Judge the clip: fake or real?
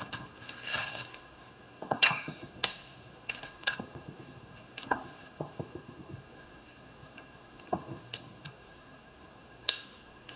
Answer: fake